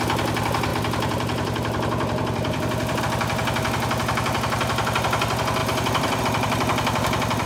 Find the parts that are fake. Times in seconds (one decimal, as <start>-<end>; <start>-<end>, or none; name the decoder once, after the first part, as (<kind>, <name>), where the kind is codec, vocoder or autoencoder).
0.7-3.0 (vocoder, BigVGAN v2); 5.6-6.2